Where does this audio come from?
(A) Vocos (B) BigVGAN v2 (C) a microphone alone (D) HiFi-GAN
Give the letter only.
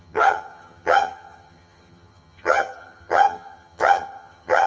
D